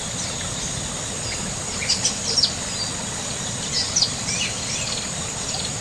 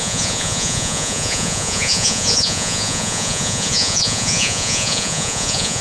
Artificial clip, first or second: second